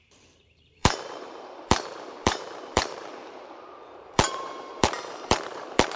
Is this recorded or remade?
remade